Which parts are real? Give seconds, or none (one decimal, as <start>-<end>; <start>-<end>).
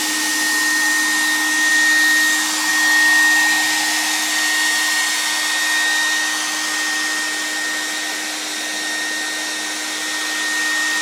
0.0-11.0